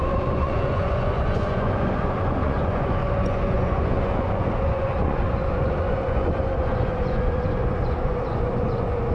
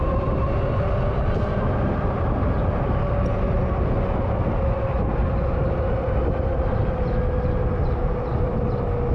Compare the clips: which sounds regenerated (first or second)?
first